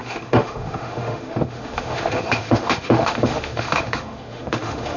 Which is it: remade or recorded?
remade